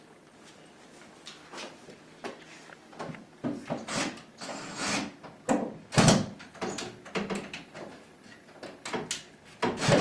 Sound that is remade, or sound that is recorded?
recorded